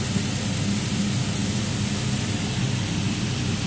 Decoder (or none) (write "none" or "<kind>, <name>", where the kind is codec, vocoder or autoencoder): none